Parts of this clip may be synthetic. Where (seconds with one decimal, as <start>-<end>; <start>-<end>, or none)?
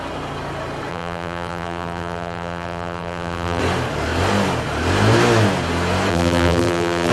0.9-3.6; 6.1-7.1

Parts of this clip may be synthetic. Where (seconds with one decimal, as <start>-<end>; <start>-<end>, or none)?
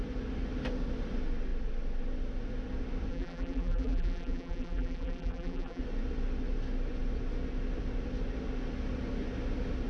3.1-5.8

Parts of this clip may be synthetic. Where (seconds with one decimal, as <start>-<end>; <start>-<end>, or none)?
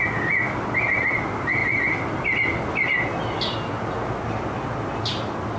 none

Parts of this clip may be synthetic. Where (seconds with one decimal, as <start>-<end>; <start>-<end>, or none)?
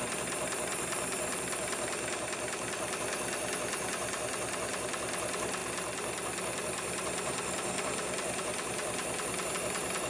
none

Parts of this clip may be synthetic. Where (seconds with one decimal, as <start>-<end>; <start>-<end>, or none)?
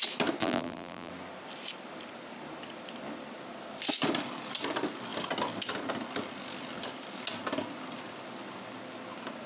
0.4-1.1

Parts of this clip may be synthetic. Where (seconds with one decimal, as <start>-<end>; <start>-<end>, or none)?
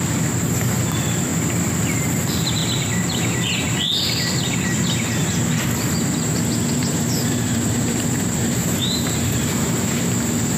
0.0-1.3; 2.0-2.6; 6.7-10.6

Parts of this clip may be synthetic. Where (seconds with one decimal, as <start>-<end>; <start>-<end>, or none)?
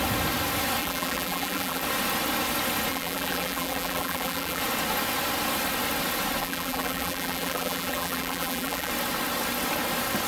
0.8-1.8; 2.9-4.6; 6.4-8.9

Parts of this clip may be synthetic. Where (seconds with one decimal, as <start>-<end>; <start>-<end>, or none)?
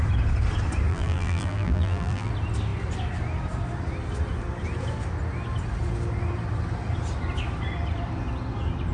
0.9-2.3